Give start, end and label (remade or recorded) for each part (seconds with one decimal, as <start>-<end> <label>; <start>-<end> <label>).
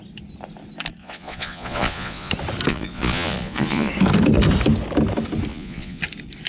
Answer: 0.0-1.0 recorded; 1.0-2.3 remade; 2.3-2.7 recorded; 2.7-3.9 remade; 3.9-5.5 recorded; 5.5-6.0 remade; 6.0-6.5 recorded